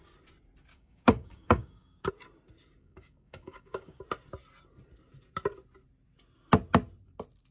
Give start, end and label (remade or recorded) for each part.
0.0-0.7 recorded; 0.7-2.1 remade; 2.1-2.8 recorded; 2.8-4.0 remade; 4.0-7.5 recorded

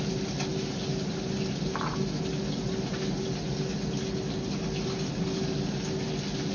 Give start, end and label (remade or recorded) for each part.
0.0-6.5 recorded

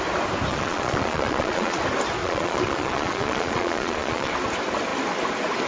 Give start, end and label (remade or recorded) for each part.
0.0-0.5 recorded; 0.5-1.8 remade; 1.8-2.2 recorded; 2.2-4.3 remade; 4.3-5.7 recorded